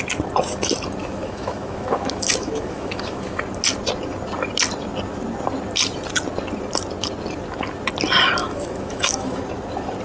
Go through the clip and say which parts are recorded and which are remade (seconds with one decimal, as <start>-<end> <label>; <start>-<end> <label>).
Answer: 0.0-1.0 recorded; 1.0-3.4 remade; 3.4-8.4 recorded; 8.4-9.4 remade; 9.4-10.0 recorded